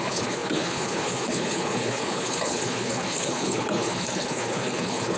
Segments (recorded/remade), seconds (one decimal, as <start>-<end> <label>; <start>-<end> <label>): 0.0-5.2 remade